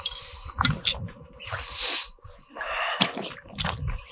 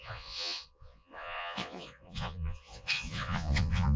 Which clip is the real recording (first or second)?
first